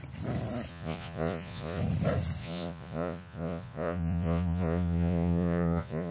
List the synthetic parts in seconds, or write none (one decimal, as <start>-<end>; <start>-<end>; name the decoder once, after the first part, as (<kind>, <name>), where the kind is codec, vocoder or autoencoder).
0.7-1.8 (vocoder, Vocos); 2.4-6.1